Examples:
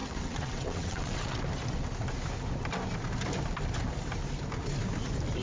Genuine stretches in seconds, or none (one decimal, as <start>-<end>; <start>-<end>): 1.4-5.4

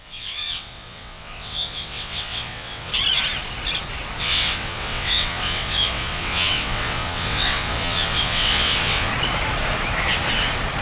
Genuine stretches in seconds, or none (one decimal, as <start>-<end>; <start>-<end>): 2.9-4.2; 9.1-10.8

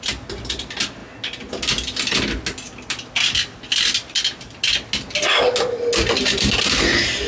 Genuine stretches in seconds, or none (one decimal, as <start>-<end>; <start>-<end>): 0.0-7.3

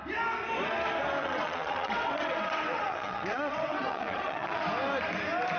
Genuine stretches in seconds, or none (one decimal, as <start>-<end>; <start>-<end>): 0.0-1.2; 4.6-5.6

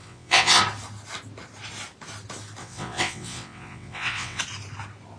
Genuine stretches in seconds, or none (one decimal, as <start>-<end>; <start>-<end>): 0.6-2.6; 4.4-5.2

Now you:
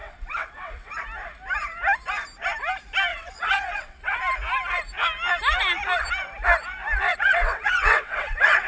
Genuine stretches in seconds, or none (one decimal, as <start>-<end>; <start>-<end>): 0.9-3.1; 4.2-7.1